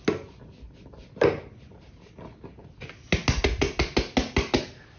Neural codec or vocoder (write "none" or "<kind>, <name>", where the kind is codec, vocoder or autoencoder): none